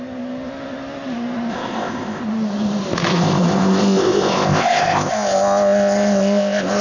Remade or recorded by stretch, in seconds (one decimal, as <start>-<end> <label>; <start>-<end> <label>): 0.0-1.5 recorded; 1.5-2.2 remade; 2.2-3.1 recorded; 3.1-6.8 remade